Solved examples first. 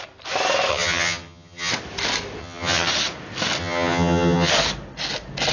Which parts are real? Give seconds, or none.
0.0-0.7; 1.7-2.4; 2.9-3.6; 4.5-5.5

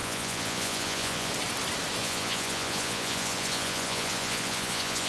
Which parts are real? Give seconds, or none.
1.3-2.0

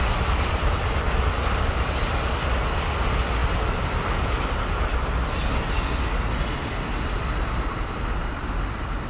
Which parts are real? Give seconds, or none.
0.0-9.1

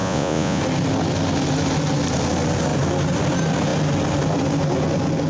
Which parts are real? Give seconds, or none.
0.6-5.3

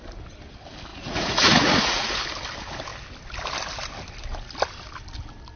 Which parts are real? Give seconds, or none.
0.0-0.9; 2.2-5.6

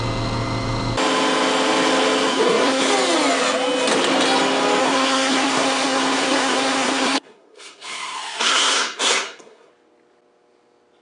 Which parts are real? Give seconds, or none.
0.0-2.3; 2.9-4.8; 9.7-11.0

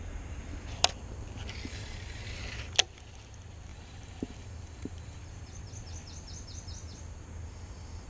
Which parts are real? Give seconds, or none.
0.0-1.7; 2.2-3.7; 5.2-8.1

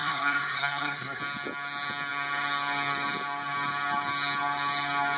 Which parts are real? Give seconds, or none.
1.2-5.2